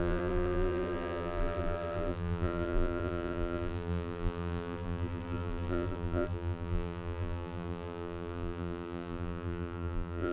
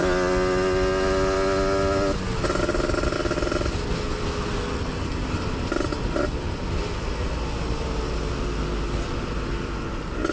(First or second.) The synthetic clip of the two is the first